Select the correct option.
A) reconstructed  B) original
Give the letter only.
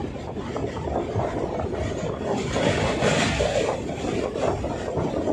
B